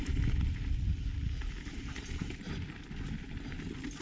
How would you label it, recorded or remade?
recorded